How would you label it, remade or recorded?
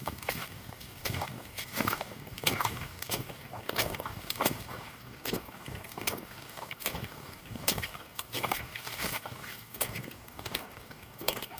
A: remade